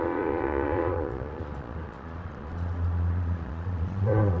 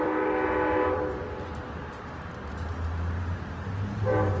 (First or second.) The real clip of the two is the second